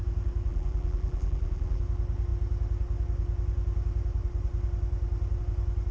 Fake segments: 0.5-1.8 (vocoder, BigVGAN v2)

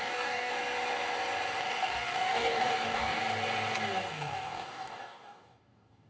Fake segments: 0.0-0.5 (codec, DAC); 1.6-3.2; 4.1-6.1

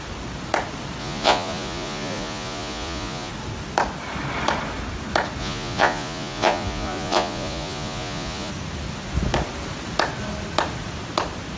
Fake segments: 1.0-3.3 (vocoder, Vocos); 5.4-8.5

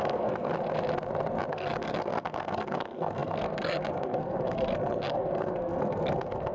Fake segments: 0.0-0.5 (codec, SNAC); 1.5-6.5

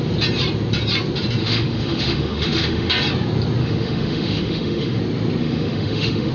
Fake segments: 1.4-2.9 (autoencoder, DAC-VAE); 3.6-5.0; 5.4-6.3